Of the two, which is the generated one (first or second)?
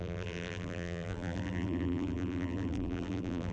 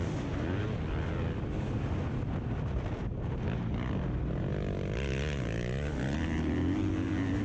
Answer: first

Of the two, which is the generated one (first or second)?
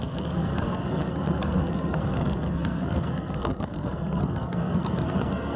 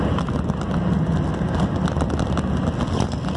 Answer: first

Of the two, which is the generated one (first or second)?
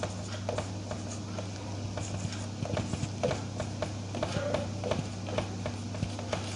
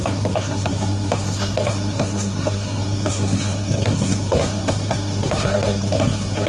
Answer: second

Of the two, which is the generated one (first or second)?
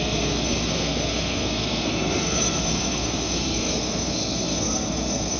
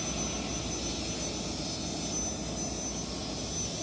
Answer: first